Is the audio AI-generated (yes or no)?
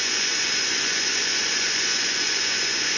yes